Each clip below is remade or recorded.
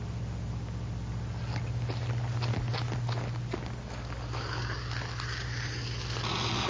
recorded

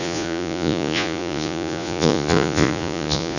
remade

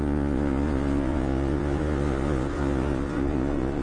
remade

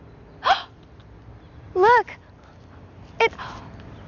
recorded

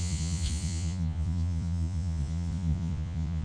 remade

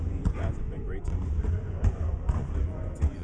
remade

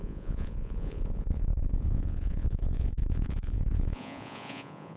remade